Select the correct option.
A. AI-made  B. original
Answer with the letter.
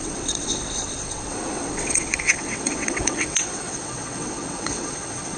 A